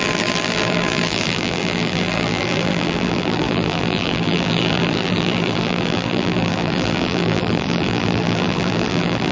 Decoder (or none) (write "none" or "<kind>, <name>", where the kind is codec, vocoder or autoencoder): vocoder, BigVGAN v2